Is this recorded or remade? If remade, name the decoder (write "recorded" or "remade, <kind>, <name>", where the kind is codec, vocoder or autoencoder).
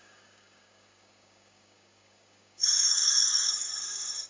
remade, codec, DAC